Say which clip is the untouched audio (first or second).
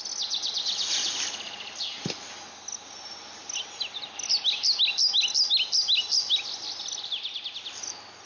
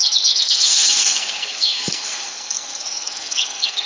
first